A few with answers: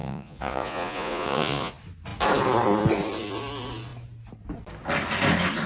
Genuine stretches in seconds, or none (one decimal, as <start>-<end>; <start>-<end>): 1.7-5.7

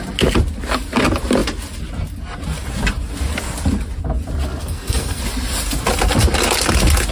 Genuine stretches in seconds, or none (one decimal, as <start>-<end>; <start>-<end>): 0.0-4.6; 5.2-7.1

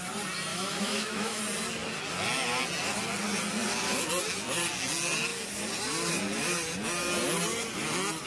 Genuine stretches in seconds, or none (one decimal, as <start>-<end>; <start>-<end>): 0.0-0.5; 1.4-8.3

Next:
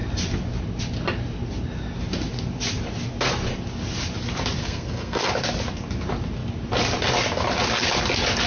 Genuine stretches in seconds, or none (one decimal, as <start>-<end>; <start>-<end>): 0.0-4.6; 5.3-8.5

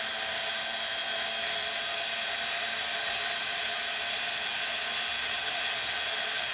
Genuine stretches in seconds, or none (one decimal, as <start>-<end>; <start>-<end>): 0.0-6.5

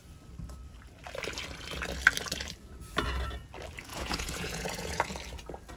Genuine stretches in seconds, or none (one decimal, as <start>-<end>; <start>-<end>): 0.0-3.9; 5.0-5.8

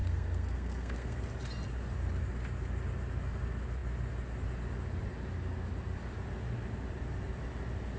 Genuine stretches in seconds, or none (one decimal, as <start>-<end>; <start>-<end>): 1.2-8.0

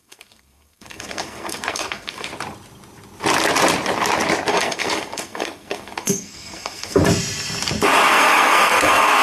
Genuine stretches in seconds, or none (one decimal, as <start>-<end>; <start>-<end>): 2.3-4.5; 7.0-8.1